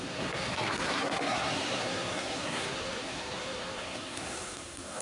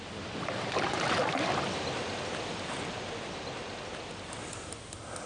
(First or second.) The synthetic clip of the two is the first